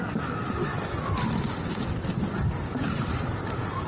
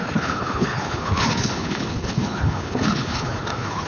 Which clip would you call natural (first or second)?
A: first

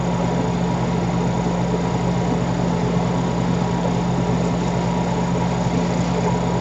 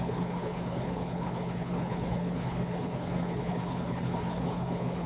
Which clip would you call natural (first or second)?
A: first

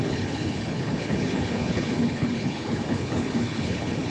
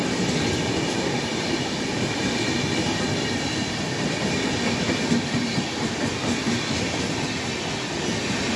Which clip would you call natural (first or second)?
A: second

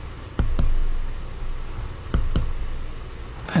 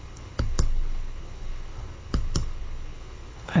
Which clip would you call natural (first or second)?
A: first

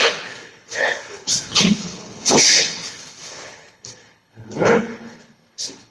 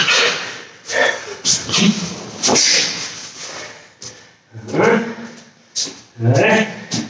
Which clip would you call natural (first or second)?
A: second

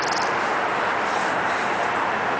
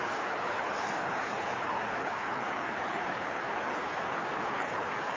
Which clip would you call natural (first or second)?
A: first